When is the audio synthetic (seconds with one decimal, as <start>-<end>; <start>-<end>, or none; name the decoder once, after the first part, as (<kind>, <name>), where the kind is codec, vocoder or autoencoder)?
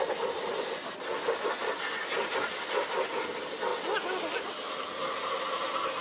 3.7-4.9 (vocoder, BigVGAN v2)